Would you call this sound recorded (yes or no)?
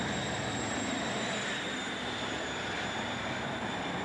yes